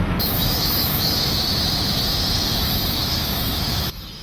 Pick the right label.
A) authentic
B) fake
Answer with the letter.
B